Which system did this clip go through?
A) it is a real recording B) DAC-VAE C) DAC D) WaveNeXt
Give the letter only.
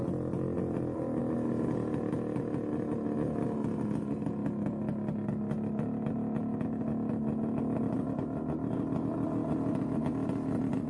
A